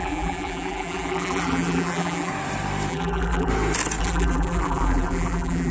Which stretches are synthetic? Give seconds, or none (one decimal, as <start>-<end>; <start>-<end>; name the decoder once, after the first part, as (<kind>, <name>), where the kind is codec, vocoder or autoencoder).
0.0-2.3 (vocoder, BigVGAN v2); 2.9-3.5; 4.0-5.7